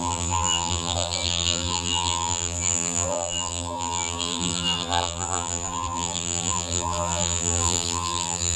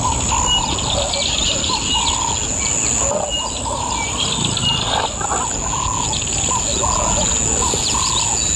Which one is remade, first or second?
first